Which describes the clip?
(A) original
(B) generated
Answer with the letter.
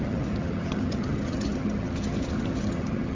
B